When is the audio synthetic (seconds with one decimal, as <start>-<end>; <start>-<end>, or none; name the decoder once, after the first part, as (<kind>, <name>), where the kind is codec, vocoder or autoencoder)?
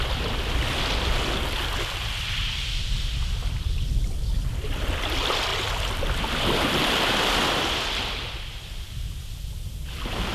none